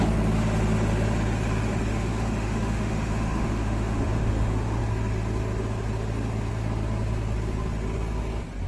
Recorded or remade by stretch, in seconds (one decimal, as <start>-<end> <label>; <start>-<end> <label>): 0.0-1.9 recorded; 1.9-4.8 remade; 4.8-8.7 recorded